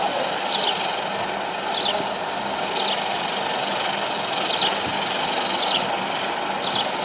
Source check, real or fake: real